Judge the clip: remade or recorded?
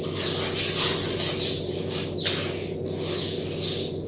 recorded